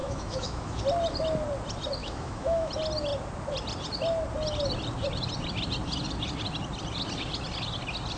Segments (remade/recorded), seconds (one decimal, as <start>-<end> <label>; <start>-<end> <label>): 0.0-0.8 remade; 0.8-2.0 recorded; 2.0-2.7 remade; 2.7-8.2 recorded